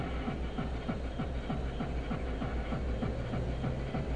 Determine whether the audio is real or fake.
real